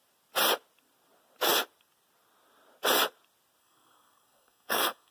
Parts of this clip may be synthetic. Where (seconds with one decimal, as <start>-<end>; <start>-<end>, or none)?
3.6-5.1